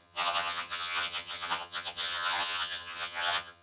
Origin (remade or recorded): remade